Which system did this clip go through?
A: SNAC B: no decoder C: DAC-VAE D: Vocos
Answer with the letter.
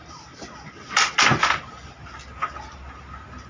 B